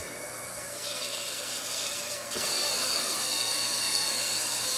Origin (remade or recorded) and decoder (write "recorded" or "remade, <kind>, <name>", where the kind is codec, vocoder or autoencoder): remade, codec, SNAC